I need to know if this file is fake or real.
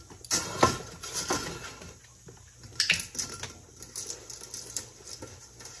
real